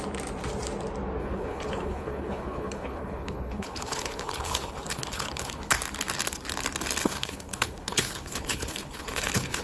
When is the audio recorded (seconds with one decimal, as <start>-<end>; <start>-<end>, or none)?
0.0-1.2; 5.7-7.0